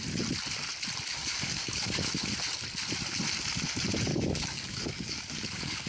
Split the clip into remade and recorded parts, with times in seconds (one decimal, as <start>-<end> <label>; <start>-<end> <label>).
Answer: 0.0-1.1 recorded; 1.1-2.1 remade; 2.1-4.1 recorded; 4.1-5.9 remade